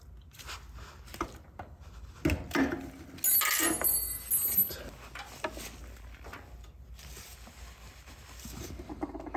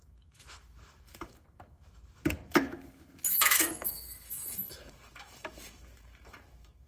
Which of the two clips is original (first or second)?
first